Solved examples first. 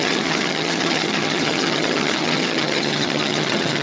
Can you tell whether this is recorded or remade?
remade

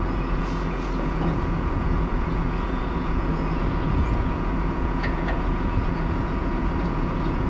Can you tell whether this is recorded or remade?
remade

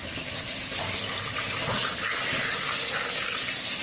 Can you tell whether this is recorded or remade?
recorded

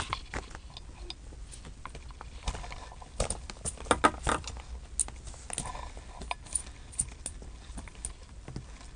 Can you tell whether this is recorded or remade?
recorded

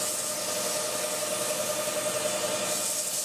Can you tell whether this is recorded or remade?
recorded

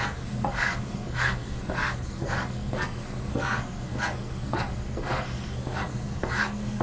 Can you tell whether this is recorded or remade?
remade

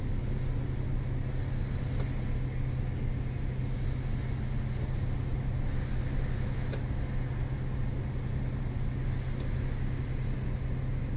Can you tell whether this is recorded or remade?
recorded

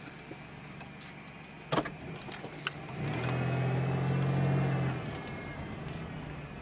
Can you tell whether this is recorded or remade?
recorded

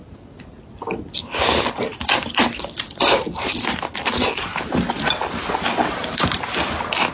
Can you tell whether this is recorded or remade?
recorded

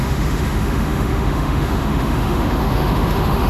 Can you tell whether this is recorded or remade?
remade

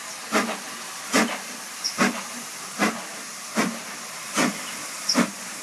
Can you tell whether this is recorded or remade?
recorded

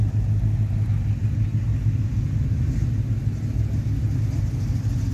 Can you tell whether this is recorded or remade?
recorded